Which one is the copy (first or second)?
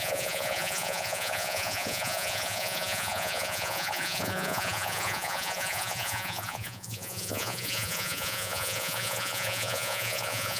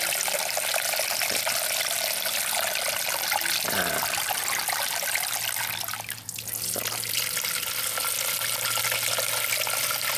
first